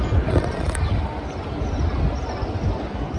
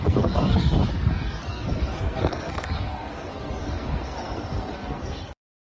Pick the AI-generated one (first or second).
second